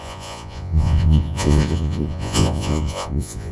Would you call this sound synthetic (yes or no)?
yes